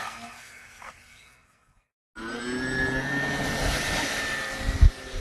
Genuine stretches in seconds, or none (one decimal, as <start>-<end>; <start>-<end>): 1.9-5.2